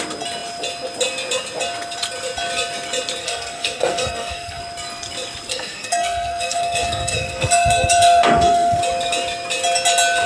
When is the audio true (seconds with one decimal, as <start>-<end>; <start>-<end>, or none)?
0.0-3.2; 4.6-5.5; 8.8-10.3